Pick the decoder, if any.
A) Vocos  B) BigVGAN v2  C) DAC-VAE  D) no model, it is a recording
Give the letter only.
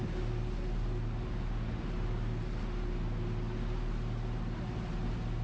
D